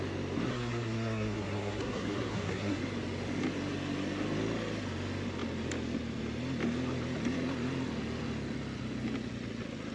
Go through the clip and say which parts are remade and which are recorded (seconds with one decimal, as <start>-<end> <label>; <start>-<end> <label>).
0.0-0.5 recorded; 0.5-2.8 remade; 2.8-9.9 recorded